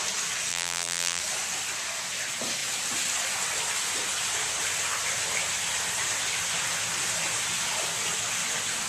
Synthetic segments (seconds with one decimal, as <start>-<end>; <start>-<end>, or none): 0.5-1.2